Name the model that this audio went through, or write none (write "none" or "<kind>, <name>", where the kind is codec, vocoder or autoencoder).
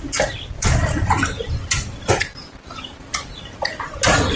none